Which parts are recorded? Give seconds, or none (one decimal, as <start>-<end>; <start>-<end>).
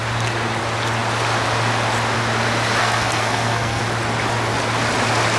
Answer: 0.0-2.8; 3.8-5.4